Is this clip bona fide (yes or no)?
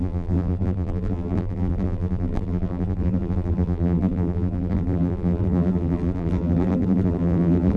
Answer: no